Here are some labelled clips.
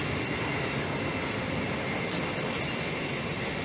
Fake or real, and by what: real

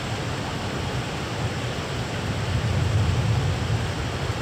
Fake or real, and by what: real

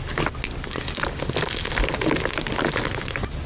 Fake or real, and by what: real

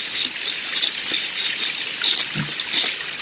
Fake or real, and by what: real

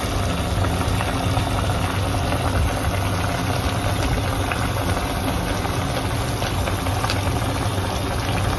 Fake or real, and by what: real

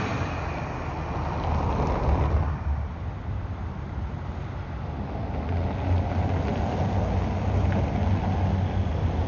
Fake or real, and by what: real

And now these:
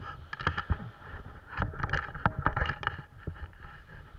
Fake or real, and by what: real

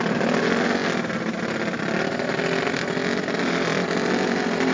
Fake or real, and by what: real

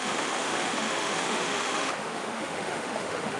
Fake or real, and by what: fake, autoencoder, DAC-VAE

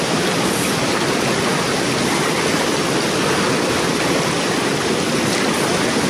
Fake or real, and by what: real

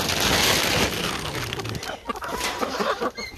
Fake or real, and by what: real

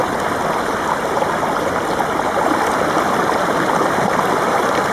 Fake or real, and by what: real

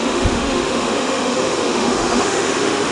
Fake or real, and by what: fake, autoencoder, DAC-VAE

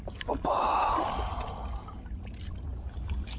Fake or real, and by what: real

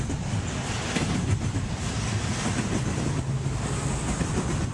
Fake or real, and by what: real